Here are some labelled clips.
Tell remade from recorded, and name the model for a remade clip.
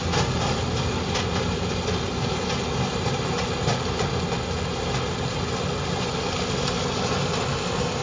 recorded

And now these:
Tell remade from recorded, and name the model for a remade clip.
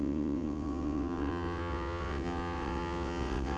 remade, vocoder, WaveNeXt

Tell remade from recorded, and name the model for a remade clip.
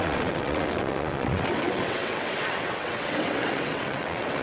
remade, vocoder, WaveNeXt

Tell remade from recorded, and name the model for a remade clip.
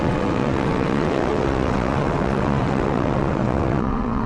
remade, vocoder, WaveNeXt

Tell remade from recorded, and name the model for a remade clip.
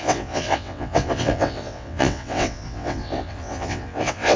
remade, vocoder, WaveNeXt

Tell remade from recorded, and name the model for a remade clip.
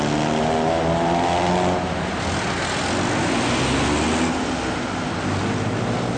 recorded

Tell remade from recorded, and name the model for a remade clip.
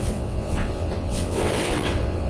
remade, vocoder, WaveNeXt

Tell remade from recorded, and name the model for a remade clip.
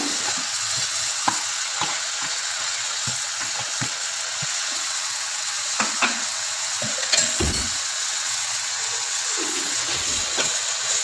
remade, vocoder, WaveNeXt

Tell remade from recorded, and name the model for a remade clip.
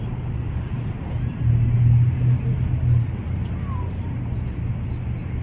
recorded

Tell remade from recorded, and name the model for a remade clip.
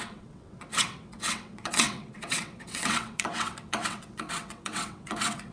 remade, vocoder, WaveNeXt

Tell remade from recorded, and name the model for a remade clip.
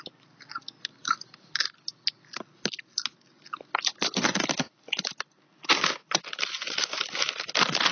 recorded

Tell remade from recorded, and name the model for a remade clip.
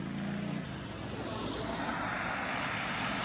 recorded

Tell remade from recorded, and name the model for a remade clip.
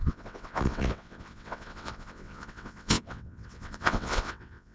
remade, vocoder, WaveNeXt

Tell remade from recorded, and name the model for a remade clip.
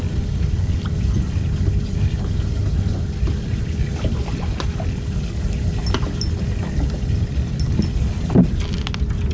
recorded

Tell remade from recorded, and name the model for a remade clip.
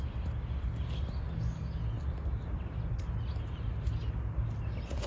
recorded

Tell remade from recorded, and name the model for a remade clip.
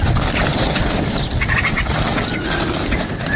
recorded